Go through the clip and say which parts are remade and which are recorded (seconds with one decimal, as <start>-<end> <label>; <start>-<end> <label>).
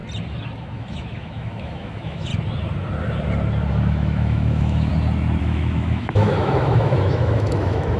0.0-0.6 recorded; 0.6-2.3 remade; 2.3-3.7 recorded; 3.7-4.9 remade; 4.9-5.4 recorded; 5.4-8.0 remade